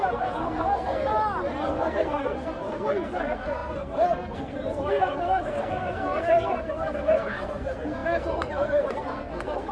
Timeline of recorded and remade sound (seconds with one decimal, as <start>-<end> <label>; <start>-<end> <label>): 0.0-1.1 remade; 1.1-1.7 recorded; 1.7-9.7 remade